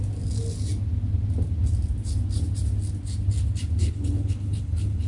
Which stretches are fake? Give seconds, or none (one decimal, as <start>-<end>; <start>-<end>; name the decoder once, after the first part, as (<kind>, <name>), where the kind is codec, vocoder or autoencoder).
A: 3.8-5.1 (codec, HILCodec)